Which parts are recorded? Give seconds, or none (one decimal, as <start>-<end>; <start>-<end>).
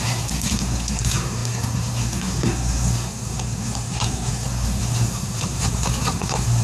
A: none